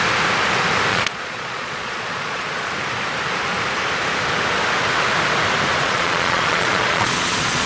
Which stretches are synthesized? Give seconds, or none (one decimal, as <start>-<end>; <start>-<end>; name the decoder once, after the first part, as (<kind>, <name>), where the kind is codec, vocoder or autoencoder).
0.9-2.7 (vocoder, Vocos); 5.8-7.7